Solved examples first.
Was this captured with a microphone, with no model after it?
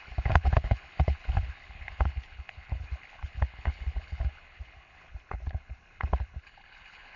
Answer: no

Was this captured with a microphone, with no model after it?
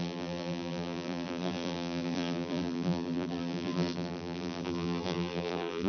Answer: no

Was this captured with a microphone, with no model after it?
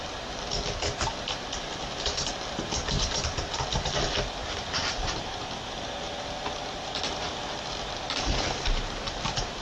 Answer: yes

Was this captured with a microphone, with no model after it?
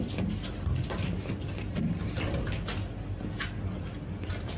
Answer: yes